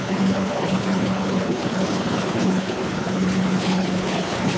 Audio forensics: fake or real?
fake